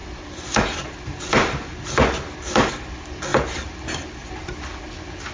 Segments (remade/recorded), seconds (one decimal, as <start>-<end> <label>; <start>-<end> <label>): 0.0-5.3 recorded